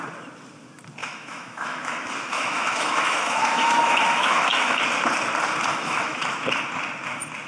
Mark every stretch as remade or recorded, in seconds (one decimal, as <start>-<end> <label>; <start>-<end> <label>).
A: 0.0-1.0 recorded; 1.0-4.8 remade; 4.8-5.7 recorded; 5.7-6.2 remade; 6.2-7.5 recorded